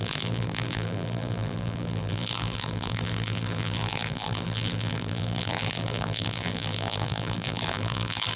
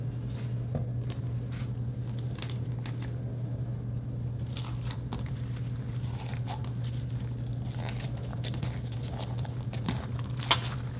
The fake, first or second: first